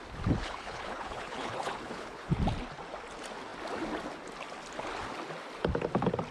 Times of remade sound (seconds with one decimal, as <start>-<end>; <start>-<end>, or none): 0.4-2.4